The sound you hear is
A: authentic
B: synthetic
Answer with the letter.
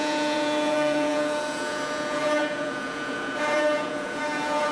B